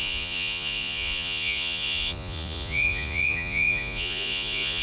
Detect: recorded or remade remade